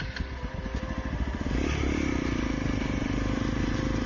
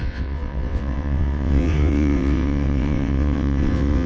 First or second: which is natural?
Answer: first